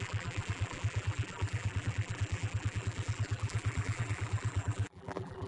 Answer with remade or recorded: remade